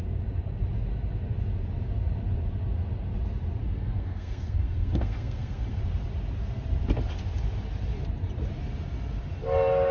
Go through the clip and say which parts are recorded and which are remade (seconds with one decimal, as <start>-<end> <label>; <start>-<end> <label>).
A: 0.0-3.6 recorded; 3.6-5.8 remade; 5.8-9.9 recorded